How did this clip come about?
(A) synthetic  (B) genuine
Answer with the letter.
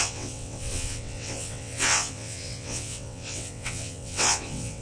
A